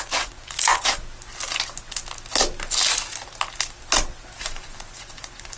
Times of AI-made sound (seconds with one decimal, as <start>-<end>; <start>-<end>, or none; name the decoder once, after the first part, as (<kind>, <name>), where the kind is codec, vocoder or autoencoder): 0.0-1.0 (vocoder, Vocos); 4.4-5.6